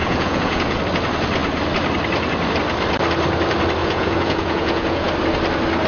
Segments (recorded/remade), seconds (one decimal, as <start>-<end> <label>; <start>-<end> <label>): 0.0-0.8 remade; 0.8-3.8 recorded; 3.8-5.1 remade; 5.1-5.9 recorded